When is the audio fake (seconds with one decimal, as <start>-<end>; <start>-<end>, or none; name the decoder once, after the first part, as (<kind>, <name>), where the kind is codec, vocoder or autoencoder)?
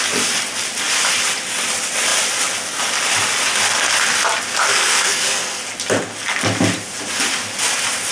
4.7-5.6 (codec, SNAC)